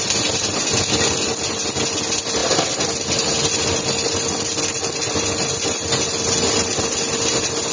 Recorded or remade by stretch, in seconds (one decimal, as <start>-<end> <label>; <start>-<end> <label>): 0.0-7.7 recorded